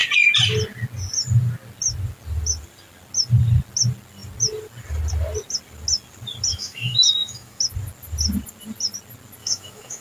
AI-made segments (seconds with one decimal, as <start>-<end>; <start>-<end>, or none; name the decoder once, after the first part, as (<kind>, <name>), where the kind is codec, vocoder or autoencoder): 6.5-7.6 (autoencoder, DAC-VAE); 9.4-10.0